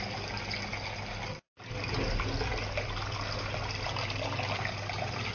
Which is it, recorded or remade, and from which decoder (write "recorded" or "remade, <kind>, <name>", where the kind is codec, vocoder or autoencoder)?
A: recorded